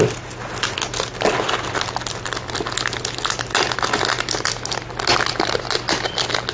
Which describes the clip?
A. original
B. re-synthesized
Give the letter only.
A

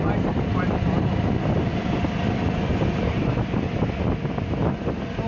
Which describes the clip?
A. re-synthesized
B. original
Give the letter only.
B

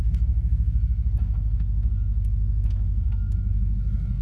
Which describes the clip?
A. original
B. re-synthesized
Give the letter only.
B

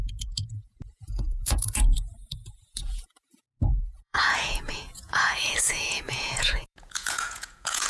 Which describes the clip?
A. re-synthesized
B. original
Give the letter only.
A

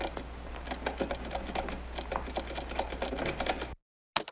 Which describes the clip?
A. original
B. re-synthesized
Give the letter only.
A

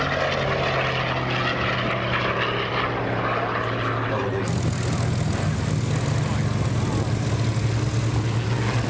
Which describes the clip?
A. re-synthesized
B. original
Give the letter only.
B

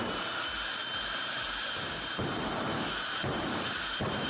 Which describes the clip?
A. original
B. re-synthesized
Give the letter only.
B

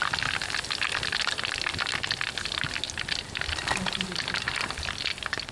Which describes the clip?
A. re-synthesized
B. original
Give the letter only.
B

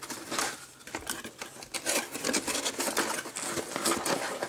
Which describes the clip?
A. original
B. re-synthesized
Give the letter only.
A